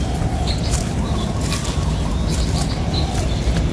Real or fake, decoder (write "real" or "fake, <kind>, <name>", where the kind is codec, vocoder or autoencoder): real